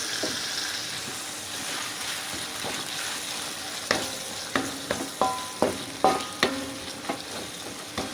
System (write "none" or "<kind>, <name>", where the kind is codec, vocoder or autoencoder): none